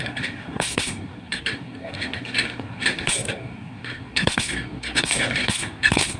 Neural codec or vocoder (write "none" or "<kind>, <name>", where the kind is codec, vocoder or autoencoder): codec, SNAC